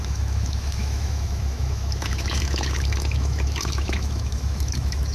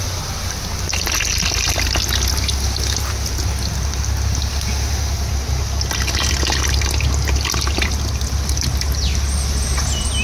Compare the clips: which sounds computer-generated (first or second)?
first